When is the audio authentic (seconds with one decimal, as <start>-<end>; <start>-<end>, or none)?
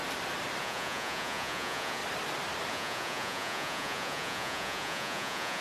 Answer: 0.0-0.6; 2.0-2.7